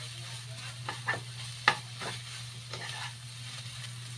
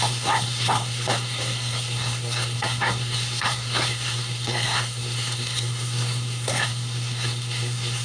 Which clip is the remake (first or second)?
second